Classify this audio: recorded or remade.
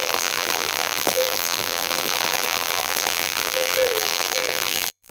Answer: remade